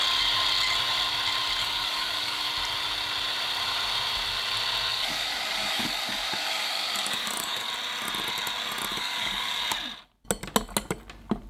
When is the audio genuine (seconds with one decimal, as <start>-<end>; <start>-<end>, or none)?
0.0-1.6; 2.5-4.9; 7.7-8.9; 9.6-11.5